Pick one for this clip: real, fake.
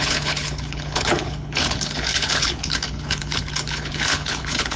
fake